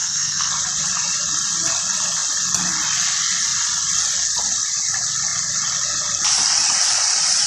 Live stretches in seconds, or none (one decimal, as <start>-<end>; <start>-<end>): 0.5-7.5